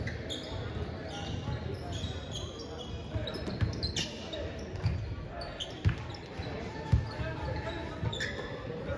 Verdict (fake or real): real